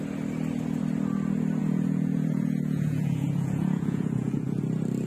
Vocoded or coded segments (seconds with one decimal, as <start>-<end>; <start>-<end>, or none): 1.6-4.6